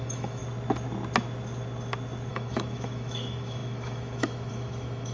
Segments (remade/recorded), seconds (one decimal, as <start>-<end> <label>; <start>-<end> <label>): 0.0-0.4 remade; 0.4-2.3 recorded; 2.3-5.1 remade